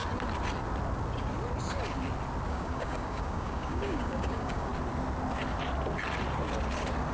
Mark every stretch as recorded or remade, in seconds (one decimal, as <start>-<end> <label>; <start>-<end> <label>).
0.0-2.5 recorded; 2.5-4.7 remade; 4.7-7.1 recorded